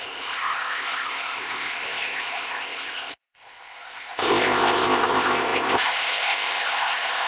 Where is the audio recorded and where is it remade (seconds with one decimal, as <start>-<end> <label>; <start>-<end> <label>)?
0.0-7.3 remade